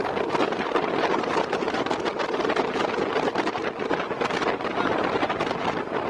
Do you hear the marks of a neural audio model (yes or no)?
no